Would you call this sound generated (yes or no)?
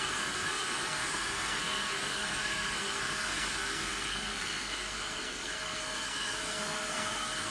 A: yes